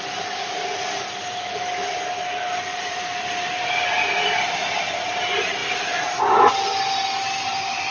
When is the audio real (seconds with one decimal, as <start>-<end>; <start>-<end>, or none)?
0.0-2.7; 5.1-5.6; 6.2-7.9